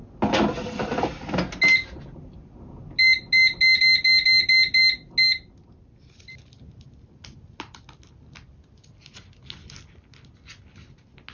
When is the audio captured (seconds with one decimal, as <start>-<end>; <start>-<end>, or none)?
0.0-11.3